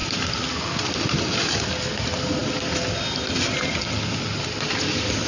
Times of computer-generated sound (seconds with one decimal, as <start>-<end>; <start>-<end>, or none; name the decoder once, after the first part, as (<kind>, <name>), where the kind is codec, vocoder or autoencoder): none